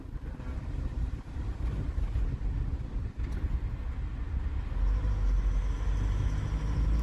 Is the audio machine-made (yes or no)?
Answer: no